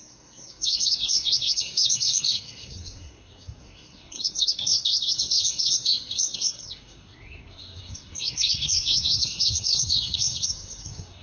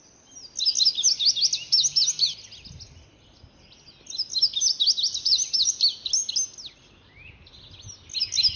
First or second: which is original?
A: second